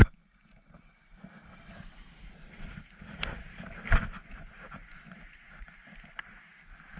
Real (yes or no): yes